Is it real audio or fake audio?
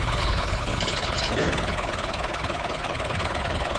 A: fake